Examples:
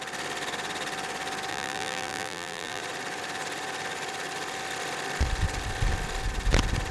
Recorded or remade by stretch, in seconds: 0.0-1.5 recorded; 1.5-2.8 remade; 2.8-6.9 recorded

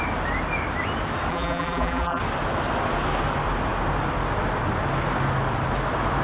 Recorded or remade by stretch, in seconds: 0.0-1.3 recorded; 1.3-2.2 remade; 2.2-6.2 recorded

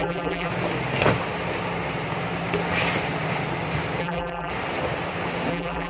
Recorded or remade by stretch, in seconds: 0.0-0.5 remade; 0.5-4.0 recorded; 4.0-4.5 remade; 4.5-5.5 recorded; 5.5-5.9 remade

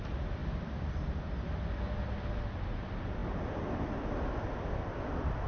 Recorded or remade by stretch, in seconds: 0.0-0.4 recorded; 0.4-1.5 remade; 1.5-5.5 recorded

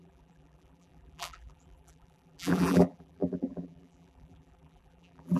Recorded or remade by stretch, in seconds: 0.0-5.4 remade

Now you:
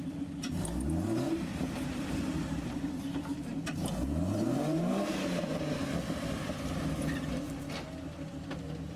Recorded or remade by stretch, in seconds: 0.0-1.5 recorded; 1.5-5.5 remade; 5.5-9.0 recorded

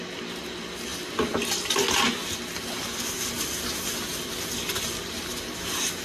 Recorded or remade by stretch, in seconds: 0.0-6.0 recorded

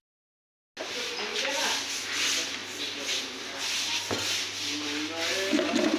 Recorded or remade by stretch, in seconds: 0.0-6.0 recorded